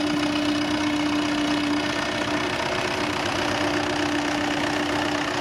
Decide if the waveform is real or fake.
real